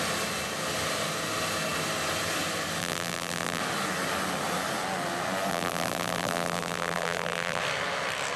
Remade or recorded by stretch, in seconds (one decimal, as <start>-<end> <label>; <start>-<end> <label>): 0.0-2.8 recorded; 2.8-3.6 remade; 3.6-5.5 recorded; 5.5-7.6 remade; 7.6-8.4 recorded